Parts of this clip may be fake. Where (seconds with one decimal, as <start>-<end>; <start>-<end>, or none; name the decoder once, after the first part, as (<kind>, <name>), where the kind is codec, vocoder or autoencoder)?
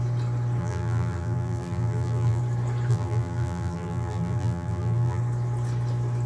0.6-2.4 (vocoder, BigVGAN v2); 2.9-5.2